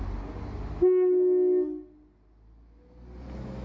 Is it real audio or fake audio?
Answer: real